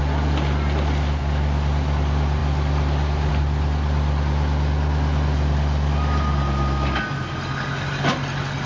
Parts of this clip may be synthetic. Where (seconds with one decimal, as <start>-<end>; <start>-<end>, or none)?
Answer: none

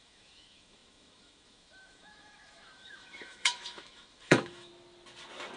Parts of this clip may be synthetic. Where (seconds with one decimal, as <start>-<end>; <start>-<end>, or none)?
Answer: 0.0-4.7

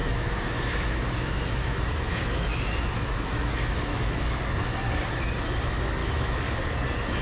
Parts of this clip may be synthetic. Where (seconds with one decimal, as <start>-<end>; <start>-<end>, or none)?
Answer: 0.0-4.3; 6.0-6.5

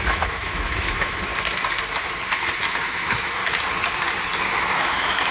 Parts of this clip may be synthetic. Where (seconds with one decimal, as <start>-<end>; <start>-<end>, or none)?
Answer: 0.0-1.3; 2.8-3.4; 4.4-5.3